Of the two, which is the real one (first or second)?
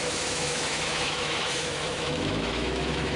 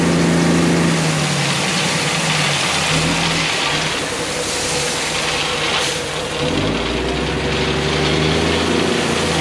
second